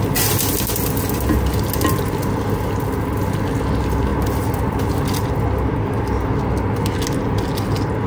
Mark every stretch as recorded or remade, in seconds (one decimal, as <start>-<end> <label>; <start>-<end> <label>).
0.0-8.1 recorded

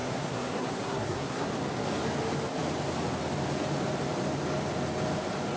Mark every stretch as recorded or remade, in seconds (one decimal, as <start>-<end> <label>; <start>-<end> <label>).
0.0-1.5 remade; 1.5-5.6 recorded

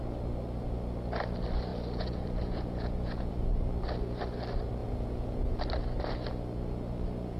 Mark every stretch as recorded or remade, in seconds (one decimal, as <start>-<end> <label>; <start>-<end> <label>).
0.0-1.7 recorded; 1.7-3.3 remade; 3.3-4.8 recorded; 4.8-5.6 remade; 5.6-7.4 recorded

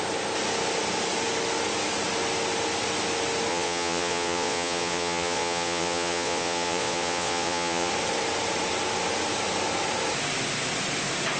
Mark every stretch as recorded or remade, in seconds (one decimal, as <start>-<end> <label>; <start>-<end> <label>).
0.0-3.5 recorded; 3.5-7.9 remade; 7.9-11.4 recorded